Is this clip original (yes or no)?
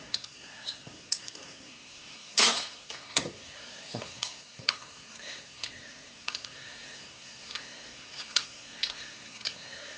no